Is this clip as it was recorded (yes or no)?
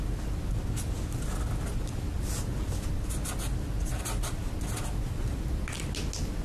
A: yes